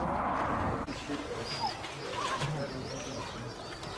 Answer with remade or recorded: recorded